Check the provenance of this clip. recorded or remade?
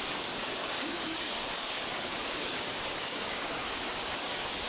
remade